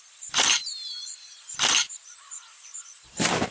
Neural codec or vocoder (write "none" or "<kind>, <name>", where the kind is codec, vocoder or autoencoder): vocoder, BigVGAN v2